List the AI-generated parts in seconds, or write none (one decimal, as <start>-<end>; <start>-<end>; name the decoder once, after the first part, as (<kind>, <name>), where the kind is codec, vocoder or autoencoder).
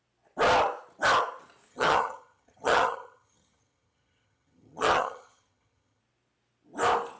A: 1.7-6.0 (vocoder, HiFi-GAN)